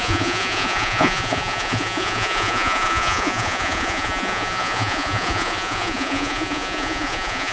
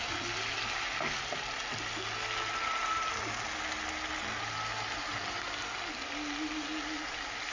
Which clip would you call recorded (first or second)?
second